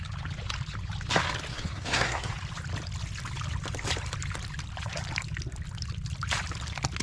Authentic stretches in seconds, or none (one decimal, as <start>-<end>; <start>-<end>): 0.0-1.5; 2.3-7.0